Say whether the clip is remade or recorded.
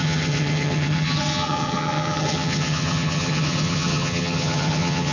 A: remade